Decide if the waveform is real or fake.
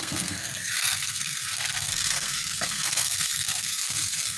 fake